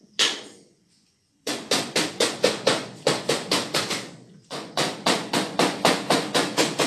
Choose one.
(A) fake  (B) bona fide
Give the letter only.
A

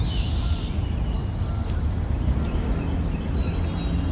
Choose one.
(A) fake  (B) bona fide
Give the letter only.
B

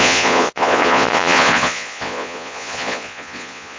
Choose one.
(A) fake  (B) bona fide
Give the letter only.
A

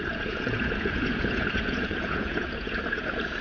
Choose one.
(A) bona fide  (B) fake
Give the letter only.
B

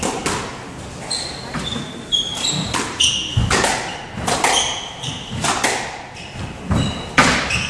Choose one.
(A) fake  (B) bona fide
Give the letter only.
B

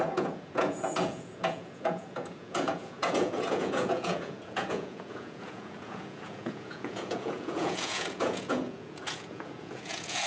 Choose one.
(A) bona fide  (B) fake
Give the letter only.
B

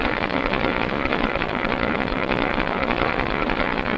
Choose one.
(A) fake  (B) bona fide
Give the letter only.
A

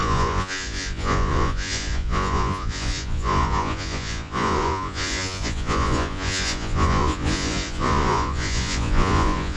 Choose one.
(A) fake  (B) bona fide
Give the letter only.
A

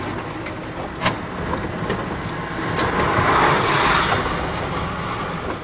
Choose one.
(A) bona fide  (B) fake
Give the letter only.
A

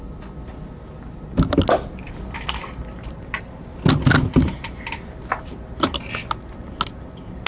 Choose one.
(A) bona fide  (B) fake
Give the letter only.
A